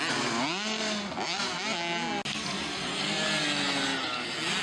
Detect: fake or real real